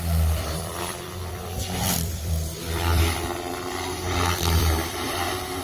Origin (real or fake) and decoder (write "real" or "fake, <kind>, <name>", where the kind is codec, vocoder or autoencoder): fake, vocoder, BigVGAN v2